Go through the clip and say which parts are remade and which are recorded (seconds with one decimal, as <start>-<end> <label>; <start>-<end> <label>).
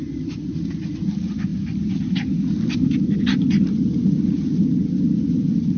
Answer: 0.0-5.8 recorded